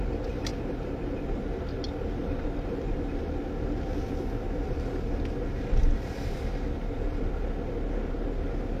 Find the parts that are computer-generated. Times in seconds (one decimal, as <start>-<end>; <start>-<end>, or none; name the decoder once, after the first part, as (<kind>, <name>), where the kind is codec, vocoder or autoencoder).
2.2-2.8 (vocoder, BigVGAN v2)